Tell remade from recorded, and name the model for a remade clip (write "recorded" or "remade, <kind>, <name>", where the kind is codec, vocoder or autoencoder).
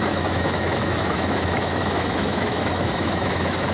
remade, autoencoder, DAC-VAE